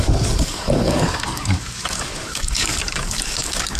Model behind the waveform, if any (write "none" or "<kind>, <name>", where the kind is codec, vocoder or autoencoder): codec, DAC